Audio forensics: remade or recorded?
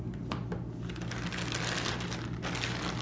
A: recorded